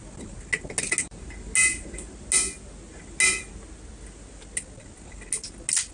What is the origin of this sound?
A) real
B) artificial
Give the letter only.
A